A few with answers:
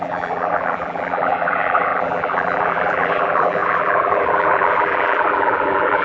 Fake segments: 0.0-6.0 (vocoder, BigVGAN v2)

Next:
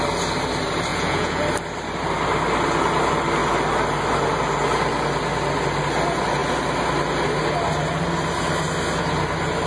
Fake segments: 0.9-1.4 (vocoder, Vocos)

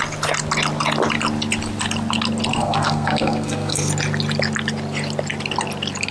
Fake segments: 2.5-3.9 (codec, SNAC)

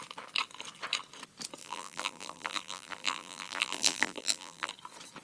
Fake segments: 1.6-4.7 (vocoder, BigVGAN v2)

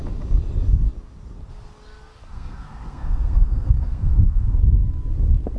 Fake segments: 2.3-4.6 (codec, SNAC)